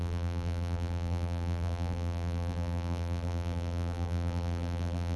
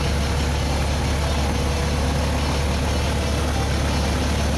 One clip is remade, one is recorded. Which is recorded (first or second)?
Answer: second